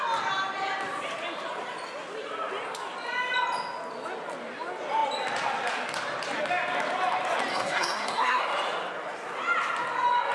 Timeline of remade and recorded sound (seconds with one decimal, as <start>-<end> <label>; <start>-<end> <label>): 0.0-7.5 recorded; 7.5-8.4 remade; 8.4-10.3 recorded